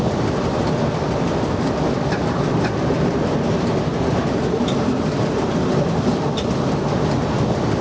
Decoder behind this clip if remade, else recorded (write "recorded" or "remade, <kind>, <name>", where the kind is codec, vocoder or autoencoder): remade, vocoder, BigVGAN v2